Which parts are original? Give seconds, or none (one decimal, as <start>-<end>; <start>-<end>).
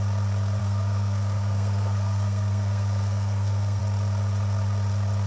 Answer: 0.0-0.6; 3.8-5.3